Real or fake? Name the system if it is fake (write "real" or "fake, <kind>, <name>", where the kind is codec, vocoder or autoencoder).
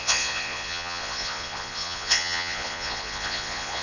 fake, vocoder, Vocos